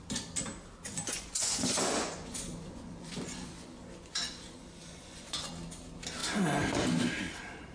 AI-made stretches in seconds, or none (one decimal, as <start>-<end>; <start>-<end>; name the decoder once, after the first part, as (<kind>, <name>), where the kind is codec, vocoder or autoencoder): 0.9-5.5 (vocoder, Vocos)